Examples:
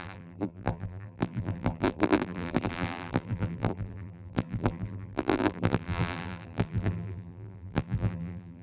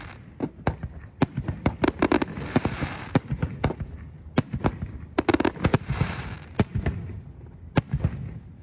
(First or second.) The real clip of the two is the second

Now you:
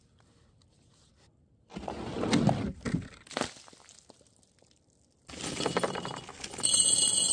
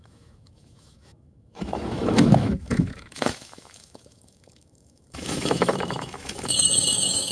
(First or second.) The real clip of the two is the first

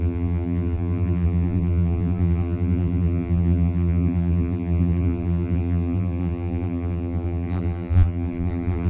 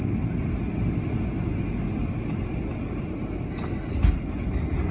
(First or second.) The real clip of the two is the second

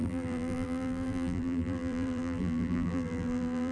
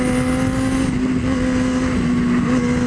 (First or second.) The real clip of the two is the second